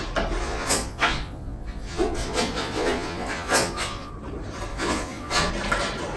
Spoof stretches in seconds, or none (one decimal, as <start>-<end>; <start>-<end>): 0.4-4.1; 4.7-5.5

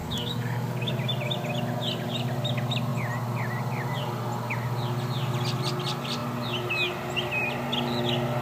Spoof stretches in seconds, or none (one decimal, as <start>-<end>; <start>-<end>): 0.0-0.9

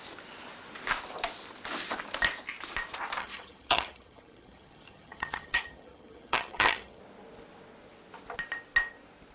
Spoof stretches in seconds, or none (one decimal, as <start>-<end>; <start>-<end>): 3.2-7.0

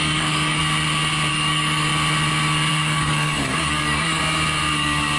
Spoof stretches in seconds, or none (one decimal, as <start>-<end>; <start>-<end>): 0.0-0.6; 1.3-1.9; 2.7-4.2; 4.7-5.2

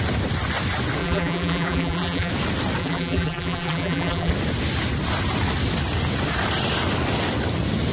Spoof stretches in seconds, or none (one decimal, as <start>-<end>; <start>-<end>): 1.0-2.3; 2.8-4.3

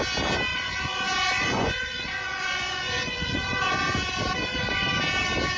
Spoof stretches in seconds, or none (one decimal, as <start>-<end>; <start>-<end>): 0.5-3.7

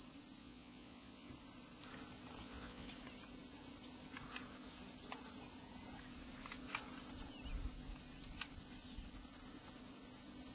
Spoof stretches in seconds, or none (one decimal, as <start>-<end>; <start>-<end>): 0.4-1.3; 2.4-2.9

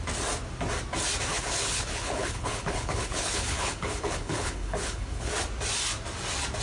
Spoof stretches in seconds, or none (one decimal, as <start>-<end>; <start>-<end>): 1.3-5.3